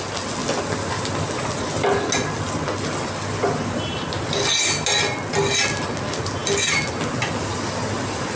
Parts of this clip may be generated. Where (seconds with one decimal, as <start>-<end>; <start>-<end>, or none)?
none